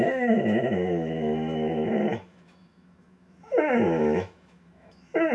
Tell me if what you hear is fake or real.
fake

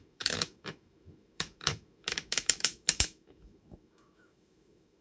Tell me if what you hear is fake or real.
fake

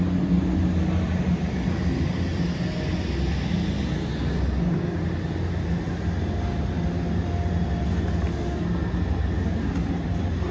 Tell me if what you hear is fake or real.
real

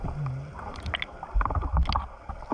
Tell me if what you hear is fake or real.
real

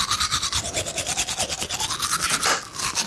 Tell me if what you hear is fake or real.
real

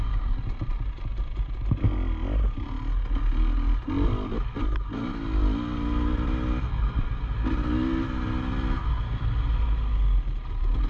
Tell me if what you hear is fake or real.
real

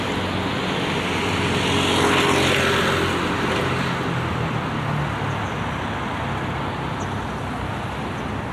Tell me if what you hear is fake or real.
real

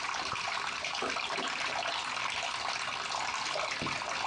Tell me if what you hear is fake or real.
real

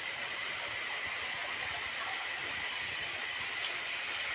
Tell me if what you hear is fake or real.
real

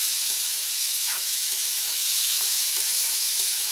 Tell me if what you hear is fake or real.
fake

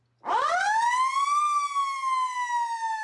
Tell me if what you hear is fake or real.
real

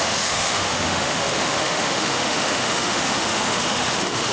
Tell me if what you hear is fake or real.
fake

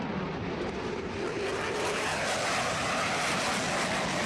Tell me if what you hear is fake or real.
real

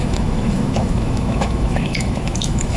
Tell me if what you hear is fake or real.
fake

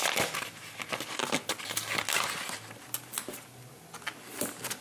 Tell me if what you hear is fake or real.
real